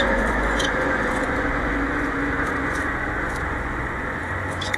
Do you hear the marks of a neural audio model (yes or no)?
yes